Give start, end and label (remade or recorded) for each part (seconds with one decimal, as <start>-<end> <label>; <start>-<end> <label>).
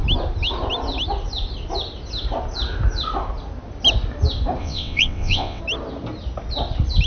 0.0-4.6 recorded; 4.6-5.6 remade; 5.6-7.1 recorded